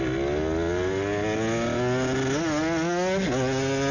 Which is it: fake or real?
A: real